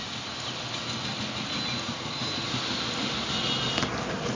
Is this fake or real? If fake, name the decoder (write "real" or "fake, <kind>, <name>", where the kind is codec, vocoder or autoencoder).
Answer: real